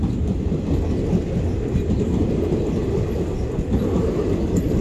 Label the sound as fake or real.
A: real